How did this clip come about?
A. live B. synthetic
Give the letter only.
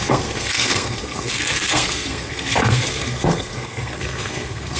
B